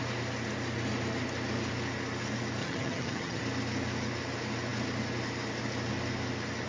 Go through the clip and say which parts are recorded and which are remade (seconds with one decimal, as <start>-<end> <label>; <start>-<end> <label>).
0.0-2.6 recorded; 2.6-3.4 remade; 3.4-6.7 recorded